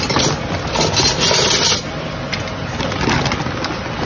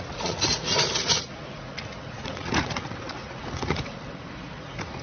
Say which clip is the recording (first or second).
first